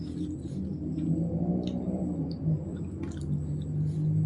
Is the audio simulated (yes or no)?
no